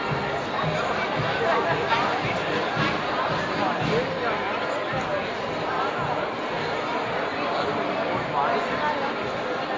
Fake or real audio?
real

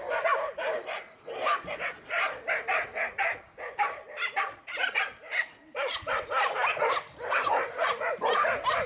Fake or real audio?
real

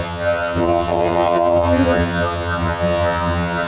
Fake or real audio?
fake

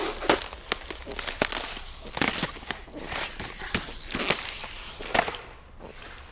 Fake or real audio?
real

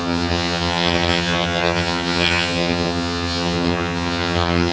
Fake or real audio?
fake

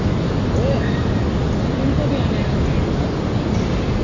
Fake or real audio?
real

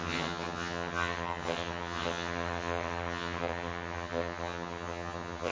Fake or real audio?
fake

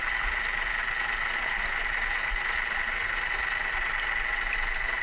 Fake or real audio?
real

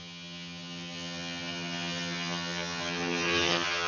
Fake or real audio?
fake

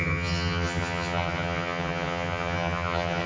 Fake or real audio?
fake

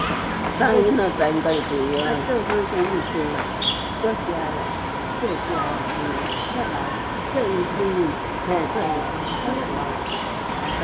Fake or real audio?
real